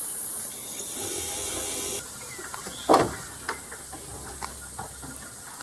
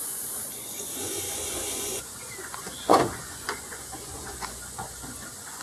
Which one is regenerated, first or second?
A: second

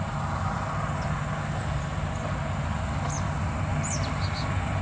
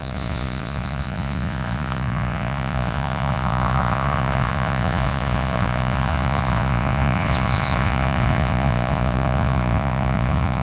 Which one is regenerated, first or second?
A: second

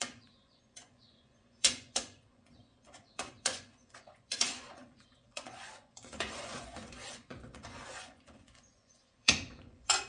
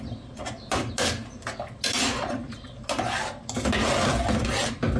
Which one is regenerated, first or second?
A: first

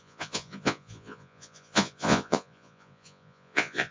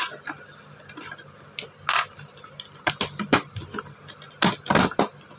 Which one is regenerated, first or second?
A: first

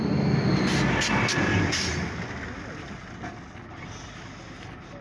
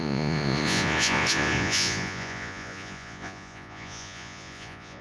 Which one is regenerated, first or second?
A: second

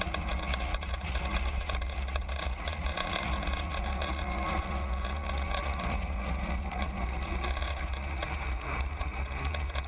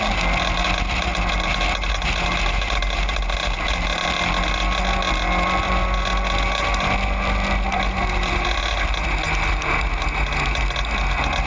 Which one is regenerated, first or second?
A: first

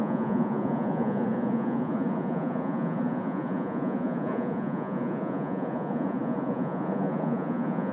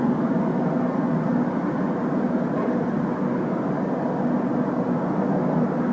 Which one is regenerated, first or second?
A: first